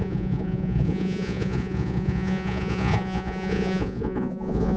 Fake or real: fake